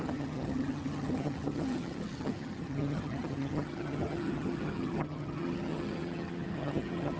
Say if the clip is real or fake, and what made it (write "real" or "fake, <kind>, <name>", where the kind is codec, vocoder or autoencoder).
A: fake, vocoder, HiFi-GAN